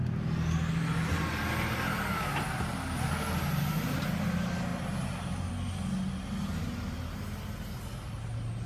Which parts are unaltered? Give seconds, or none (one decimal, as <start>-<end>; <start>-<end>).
0.0-8.7